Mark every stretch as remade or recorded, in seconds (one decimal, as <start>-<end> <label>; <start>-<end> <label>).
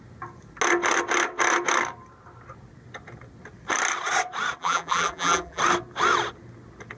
0.0-4.6 recorded; 4.6-5.6 remade; 5.6-7.0 recorded